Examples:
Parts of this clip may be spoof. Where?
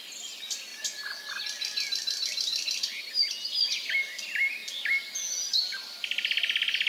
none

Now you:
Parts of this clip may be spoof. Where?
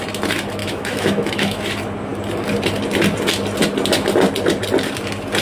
0.6-1.6 (autoencoder, DAC-VAE)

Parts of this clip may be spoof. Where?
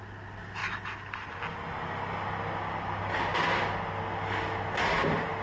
none